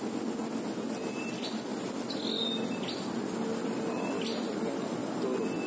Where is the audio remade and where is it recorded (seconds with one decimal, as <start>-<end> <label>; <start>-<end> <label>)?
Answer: 0.0-1.7 recorded; 1.7-2.2 remade; 2.2-4.3 recorded; 4.3-4.9 remade; 4.9-5.7 recorded